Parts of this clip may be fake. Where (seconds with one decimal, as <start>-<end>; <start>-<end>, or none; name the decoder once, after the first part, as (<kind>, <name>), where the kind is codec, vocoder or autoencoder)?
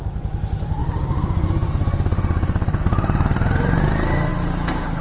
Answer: 0.8-3.8 (vocoder, BigVGAN v2); 4.3-5.0